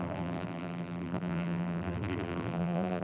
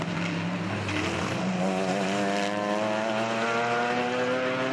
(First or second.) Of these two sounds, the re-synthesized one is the first